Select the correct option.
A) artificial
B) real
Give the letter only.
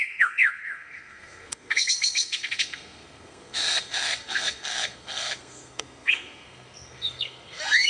A